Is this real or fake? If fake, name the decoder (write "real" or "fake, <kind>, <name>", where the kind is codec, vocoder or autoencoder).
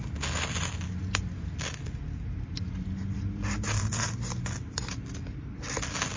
real